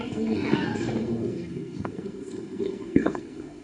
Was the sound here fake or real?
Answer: fake